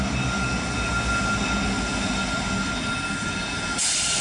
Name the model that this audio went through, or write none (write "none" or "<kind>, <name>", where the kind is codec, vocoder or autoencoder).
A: none